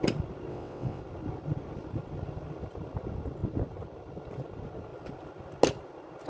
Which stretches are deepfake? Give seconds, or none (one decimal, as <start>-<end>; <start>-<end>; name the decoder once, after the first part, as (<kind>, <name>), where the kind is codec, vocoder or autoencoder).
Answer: 0.5-1.0 (vocoder, WaveNeXt)